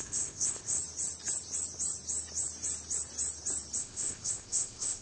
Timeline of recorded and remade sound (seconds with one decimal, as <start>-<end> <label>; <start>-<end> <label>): 0.0-0.8 remade; 0.8-3.8 recorded; 3.8-5.0 remade